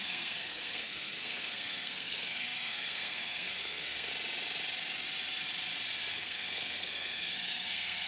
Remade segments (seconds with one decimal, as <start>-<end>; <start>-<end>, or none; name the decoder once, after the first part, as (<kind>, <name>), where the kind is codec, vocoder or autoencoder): 0.0-4.1 (codec, SNAC); 6.1-8.1

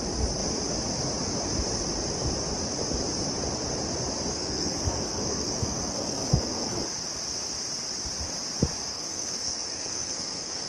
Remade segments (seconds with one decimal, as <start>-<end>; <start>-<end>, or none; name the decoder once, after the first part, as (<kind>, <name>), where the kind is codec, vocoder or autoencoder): 4.3-7.0 (codec, SNAC); 8.9-10.7

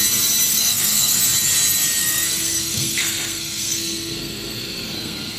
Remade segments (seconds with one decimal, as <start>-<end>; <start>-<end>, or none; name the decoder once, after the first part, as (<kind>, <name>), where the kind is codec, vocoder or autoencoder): 0.5-1.2 (codec, SNAC); 2.0-5.4

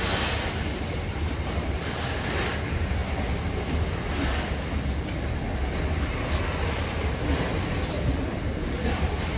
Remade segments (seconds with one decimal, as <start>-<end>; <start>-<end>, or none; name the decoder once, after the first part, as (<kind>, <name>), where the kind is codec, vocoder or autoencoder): none

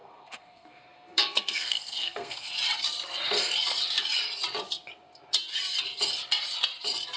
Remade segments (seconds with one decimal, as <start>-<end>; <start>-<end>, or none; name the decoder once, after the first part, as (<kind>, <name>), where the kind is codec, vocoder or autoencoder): 0.0-2.5 (codec, SNAC)

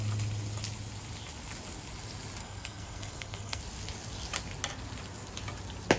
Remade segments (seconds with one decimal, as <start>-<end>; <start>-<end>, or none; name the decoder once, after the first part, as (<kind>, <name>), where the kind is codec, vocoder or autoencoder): 2.4-3.6 (codec, SNAC)

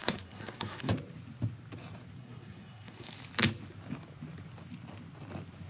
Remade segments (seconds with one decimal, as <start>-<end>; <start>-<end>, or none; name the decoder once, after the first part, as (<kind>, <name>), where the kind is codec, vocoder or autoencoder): 0.0-0.9 (codec, SNAC); 2.2-3.1

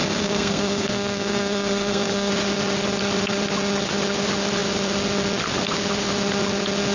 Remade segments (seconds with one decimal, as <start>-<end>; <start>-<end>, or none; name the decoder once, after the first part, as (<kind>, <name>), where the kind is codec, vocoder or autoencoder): 0.0-2.3 (codec, SNAC)